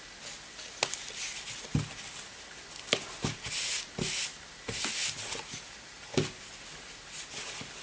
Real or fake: real